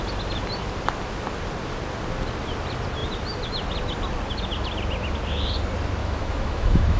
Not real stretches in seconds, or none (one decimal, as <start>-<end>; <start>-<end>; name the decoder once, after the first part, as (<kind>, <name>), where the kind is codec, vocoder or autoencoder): 6.0-7.0 (autoencoder, DAC-VAE)